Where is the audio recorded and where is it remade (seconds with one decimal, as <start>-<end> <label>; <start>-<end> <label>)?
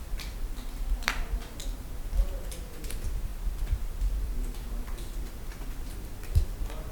0.0-6.9 remade